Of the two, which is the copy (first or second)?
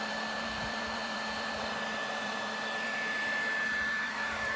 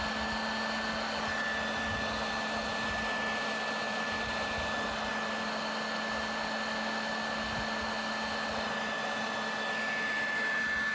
first